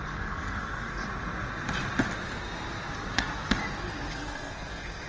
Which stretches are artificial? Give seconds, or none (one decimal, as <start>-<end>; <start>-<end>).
0.0-1.0; 4.1-5.1